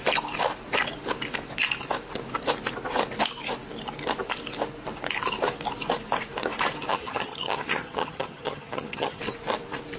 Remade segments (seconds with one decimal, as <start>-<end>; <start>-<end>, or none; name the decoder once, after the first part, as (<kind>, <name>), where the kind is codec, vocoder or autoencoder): 6.9-9.2 (vocoder, HiFi-GAN)